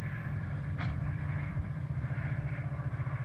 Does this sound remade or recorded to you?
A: remade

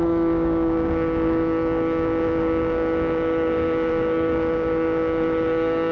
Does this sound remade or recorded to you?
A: remade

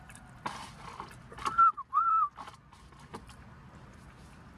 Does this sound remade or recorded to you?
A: remade